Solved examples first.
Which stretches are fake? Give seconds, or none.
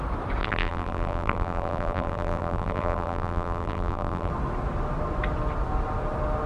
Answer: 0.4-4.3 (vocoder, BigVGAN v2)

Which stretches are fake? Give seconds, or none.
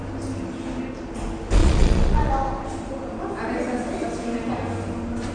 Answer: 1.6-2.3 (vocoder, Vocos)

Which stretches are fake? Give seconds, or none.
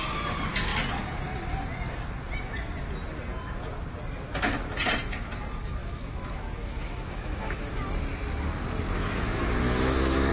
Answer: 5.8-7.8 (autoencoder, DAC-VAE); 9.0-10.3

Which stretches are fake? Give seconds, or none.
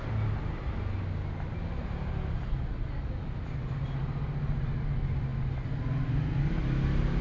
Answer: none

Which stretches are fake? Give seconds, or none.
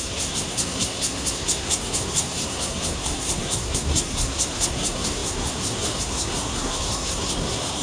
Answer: 0.0-7.8 (codec, SNAC)